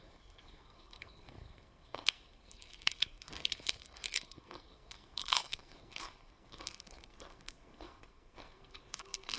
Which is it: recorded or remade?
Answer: remade